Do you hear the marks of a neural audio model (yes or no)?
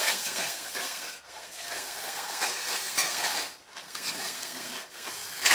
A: yes